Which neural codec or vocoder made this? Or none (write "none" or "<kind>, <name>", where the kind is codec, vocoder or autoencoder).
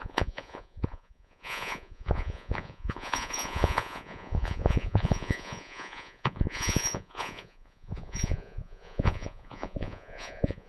vocoder, Vocos